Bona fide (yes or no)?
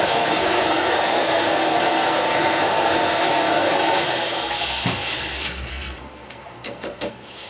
no